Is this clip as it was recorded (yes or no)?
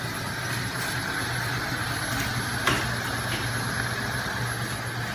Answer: yes